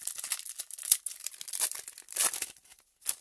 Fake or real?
real